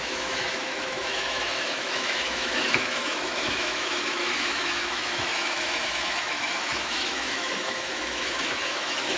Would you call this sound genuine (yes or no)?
no